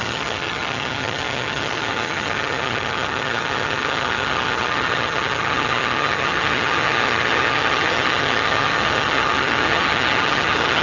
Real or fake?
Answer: fake